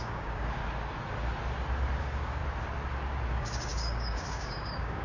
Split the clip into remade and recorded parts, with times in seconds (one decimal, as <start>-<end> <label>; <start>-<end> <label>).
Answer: 0.0-0.6 remade; 0.6-2.0 recorded; 2.0-2.4 remade; 2.4-3.3 recorded; 3.3-5.0 remade